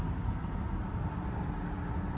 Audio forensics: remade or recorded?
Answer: recorded